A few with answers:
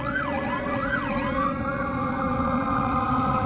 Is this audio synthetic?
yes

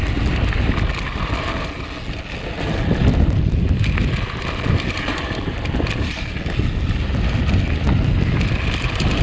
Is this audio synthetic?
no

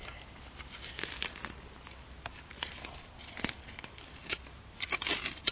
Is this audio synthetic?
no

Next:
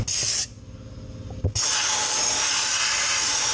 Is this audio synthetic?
no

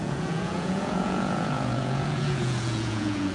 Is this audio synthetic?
yes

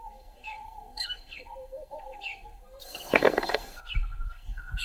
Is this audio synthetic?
yes